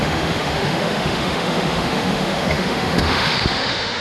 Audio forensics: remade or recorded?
remade